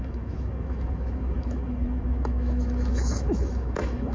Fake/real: fake